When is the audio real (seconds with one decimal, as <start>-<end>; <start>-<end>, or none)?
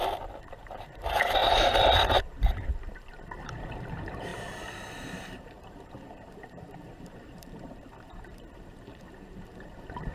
1.4-2.2; 4.3-5.2